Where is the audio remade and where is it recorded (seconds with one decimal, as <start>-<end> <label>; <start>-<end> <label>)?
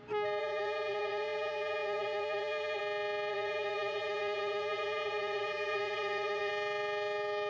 0.0-0.4 recorded; 0.4-2.8 remade; 2.8-3.3 recorded; 3.3-6.5 remade; 6.5-7.5 recorded